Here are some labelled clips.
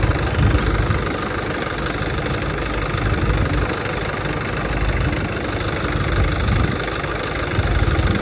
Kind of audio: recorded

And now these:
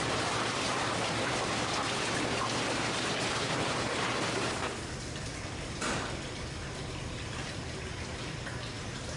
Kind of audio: remade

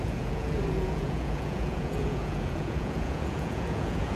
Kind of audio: remade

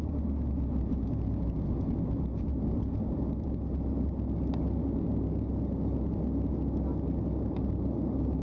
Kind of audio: recorded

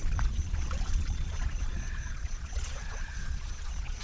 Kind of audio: remade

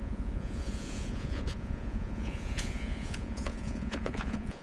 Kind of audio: remade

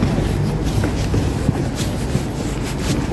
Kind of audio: recorded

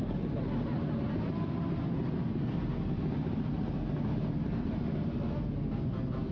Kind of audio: recorded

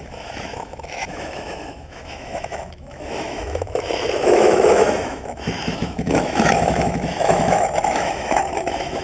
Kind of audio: remade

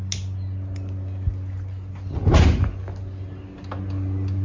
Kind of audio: recorded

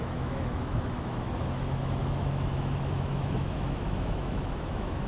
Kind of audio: remade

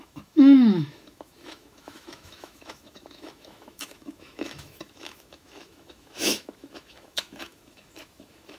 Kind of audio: remade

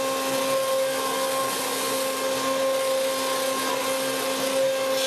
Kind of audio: recorded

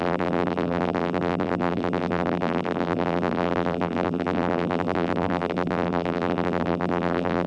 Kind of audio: remade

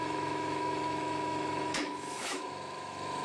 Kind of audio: remade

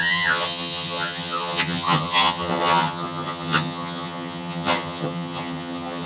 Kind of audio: remade